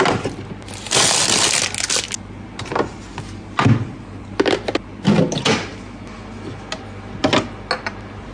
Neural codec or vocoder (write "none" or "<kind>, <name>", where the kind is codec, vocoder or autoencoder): none